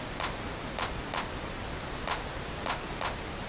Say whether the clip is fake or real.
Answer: real